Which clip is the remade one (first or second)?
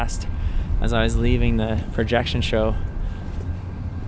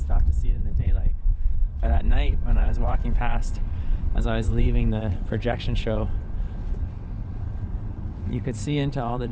second